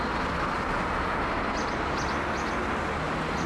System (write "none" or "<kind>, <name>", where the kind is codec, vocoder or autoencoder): none